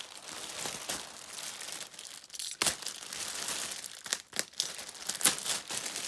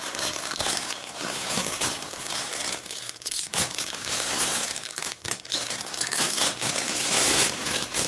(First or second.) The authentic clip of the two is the first